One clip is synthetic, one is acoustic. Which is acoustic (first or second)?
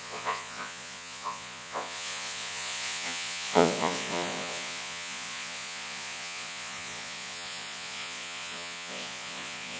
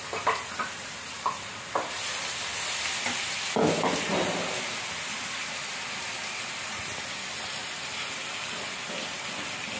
second